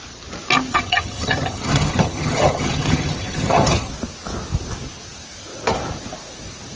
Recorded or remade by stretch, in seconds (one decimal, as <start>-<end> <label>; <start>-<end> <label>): 0.0-0.7 recorded; 0.7-3.9 remade; 3.9-6.8 recorded